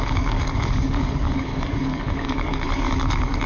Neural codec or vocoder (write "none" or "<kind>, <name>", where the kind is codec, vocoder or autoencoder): codec, DAC